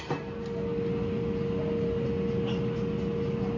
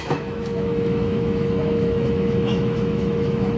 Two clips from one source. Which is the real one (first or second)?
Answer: first